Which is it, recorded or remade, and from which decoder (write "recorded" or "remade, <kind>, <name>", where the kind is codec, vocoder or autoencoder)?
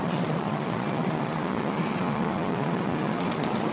remade, vocoder, Vocos